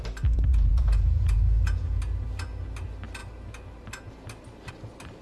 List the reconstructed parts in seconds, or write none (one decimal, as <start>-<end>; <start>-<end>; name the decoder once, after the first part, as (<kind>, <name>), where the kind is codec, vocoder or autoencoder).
0.5-2.0 (vocoder, Vocos)